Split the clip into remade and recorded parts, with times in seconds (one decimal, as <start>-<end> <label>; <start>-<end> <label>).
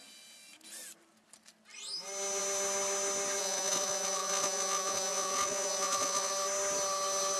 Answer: 0.0-3.4 recorded; 3.4-6.3 remade; 6.3-7.4 recorded